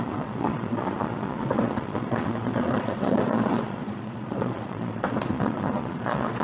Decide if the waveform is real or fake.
fake